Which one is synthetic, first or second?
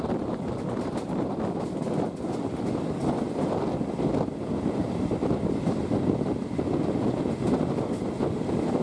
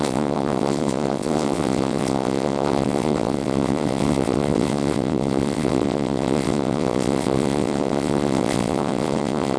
second